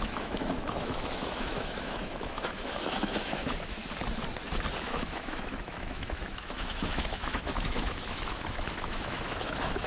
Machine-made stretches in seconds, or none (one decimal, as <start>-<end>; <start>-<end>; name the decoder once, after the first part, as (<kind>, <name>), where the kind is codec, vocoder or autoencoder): 0.0-3.8 (autoencoder, DAC-VAE); 4.8-9.9